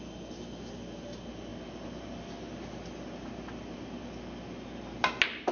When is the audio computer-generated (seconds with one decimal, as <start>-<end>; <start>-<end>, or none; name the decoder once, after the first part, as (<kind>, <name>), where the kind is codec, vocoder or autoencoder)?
none